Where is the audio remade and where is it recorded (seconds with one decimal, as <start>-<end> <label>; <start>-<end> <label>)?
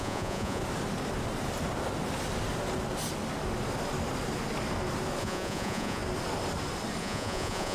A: 0.0-0.6 remade; 0.6-5.2 recorded; 5.2-6.0 remade; 6.0-7.0 recorded; 7.0-7.7 remade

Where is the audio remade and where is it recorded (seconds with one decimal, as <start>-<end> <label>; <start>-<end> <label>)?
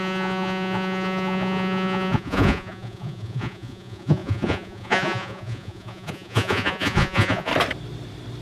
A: 0.0-7.5 remade; 7.5-8.4 recorded